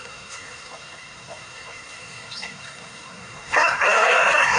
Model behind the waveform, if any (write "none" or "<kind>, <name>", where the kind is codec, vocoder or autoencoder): codec, SNAC